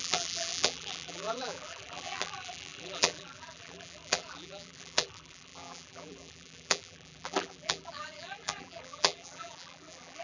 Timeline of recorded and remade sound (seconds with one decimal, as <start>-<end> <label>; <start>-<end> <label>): 0.0-10.2 remade